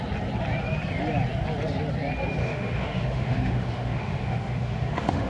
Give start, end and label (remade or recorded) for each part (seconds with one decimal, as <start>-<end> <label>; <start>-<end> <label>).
0.0-2.4 recorded; 2.4-5.3 remade